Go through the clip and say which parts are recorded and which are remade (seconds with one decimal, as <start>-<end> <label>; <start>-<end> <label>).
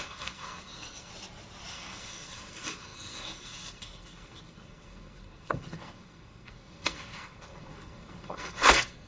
0.0-1.1 remade; 1.1-1.7 recorded; 1.7-9.1 remade